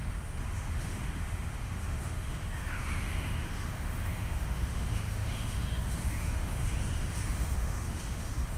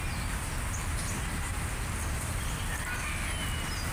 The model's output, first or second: first